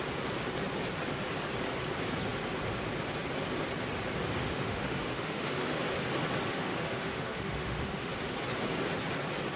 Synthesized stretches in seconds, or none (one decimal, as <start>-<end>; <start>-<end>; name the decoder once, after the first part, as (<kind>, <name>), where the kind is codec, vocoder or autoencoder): 4.4-5.8 (autoencoder, DAC-VAE); 6.5-8.1